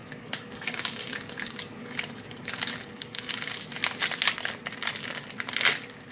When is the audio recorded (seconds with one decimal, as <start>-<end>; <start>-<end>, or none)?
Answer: 3.7-6.1